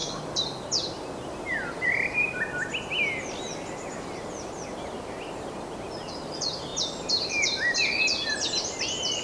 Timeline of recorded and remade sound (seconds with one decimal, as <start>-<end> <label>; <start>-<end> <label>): 0.0-9.2 remade

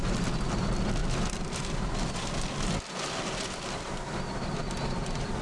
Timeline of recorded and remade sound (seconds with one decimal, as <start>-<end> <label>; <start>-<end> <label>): 0.0-5.4 recorded